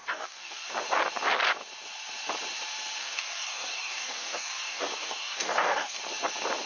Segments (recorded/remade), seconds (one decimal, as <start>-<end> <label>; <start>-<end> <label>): 0.0-0.7 remade; 0.7-3.0 recorded; 3.0-6.0 remade; 6.0-6.7 recorded